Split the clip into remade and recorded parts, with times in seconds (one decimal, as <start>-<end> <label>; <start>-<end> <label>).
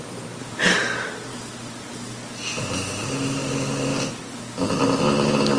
0.0-5.6 recorded